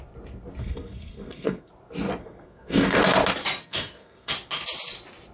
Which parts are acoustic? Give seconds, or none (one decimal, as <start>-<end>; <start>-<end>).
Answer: 0.0-0.6; 1.7-2.2; 3.0-3.6; 4.3-5.3